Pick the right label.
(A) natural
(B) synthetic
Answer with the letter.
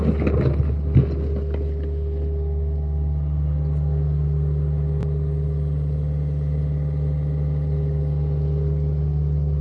A